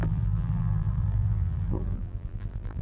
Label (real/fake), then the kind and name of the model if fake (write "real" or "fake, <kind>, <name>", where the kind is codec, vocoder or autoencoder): fake, vocoder, BigVGAN v2